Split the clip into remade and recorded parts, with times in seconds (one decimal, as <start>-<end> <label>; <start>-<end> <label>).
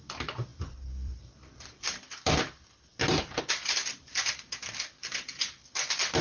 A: 0.0-0.5 recorded; 0.5-3.4 remade; 3.4-3.9 recorded; 3.9-5.6 remade; 5.6-6.2 recorded